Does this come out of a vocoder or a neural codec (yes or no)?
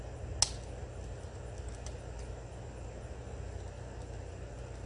no